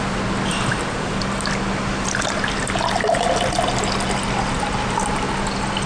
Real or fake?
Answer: real